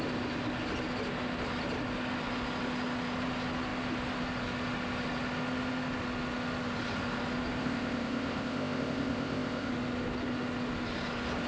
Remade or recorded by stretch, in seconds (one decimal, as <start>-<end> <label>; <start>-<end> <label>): 0.0-7.6 recorded; 7.6-9.7 remade; 9.7-11.5 recorded